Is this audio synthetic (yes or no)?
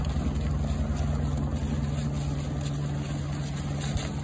no